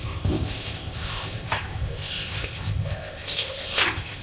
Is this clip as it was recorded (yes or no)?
no